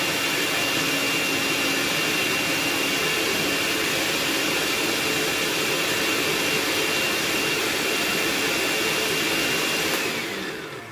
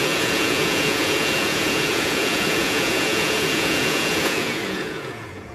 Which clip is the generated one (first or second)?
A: second